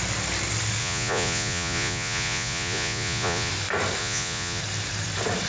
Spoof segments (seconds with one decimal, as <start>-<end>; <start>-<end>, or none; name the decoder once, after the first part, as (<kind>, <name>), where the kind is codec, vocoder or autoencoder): 0.8-3.5 (vocoder, Vocos); 4.0-4.6